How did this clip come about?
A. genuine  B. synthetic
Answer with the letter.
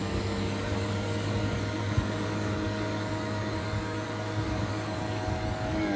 B